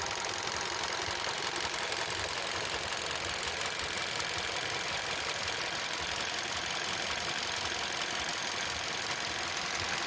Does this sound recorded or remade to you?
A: recorded